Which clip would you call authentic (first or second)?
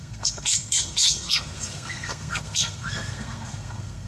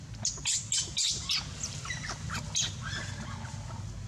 second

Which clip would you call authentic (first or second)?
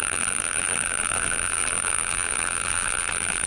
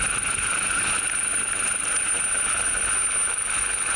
second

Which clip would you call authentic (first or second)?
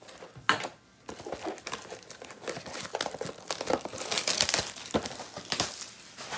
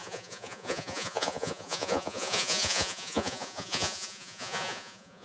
first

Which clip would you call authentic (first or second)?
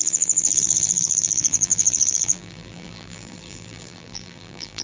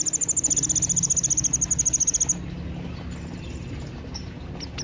second